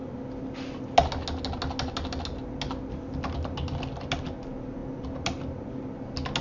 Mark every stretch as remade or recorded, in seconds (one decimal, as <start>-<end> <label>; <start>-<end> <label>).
0.0-6.4 recorded